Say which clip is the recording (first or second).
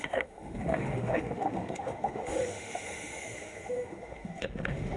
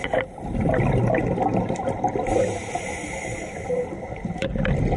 second